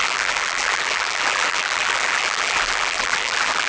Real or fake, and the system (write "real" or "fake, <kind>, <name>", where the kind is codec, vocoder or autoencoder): fake, vocoder, BigVGAN v2